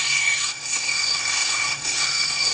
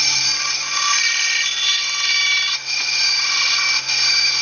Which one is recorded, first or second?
second